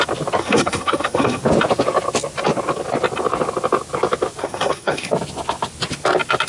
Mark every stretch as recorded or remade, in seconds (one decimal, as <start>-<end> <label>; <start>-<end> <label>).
0.0-0.4 recorded; 0.4-1.4 remade; 1.4-4.4 recorded; 4.4-5.1 remade; 5.1-6.5 recorded